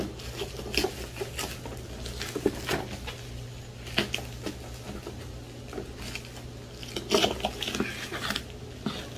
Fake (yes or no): no